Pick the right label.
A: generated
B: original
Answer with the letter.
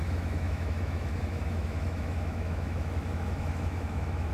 A